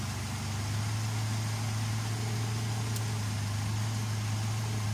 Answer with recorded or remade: recorded